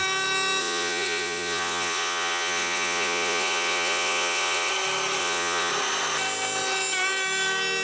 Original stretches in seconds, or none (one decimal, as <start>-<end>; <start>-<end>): 0.0-0.6; 4.7-5.2; 5.7-7.8